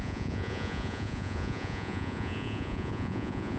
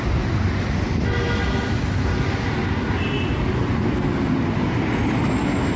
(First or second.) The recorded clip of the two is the second